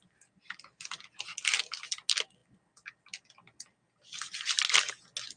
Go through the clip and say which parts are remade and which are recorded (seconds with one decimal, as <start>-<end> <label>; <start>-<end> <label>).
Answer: 0.0-5.4 recorded